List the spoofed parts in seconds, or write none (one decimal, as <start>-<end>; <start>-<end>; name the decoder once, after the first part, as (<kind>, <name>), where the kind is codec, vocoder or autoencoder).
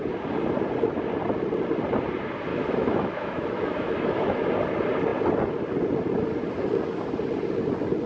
2.5-4.5 (autoencoder, DAC-VAE)